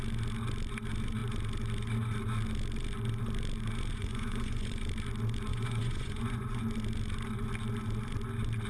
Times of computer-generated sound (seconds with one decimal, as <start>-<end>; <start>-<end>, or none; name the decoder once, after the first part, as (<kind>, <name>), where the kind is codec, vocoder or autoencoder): 3.9-4.8 (vocoder, Vocos); 5.5-6.6